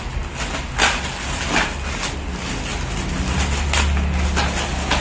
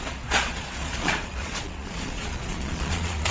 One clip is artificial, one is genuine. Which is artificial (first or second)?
second